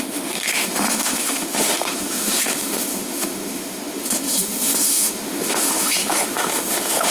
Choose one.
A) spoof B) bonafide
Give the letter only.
A